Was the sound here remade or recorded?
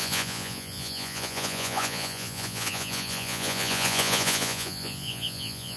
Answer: remade